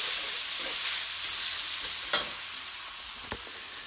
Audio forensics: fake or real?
real